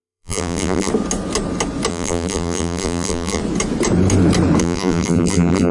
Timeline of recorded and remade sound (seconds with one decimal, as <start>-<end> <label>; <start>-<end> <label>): 0.0-0.9 remade; 0.9-1.9 recorded; 1.9-3.4 remade; 3.4-4.6 recorded; 4.6-5.7 remade